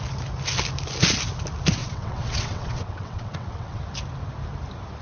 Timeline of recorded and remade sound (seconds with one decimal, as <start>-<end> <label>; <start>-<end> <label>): 0.0-1.8 recorded; 1.8-3.8 remade; 3.8-5.0 recorded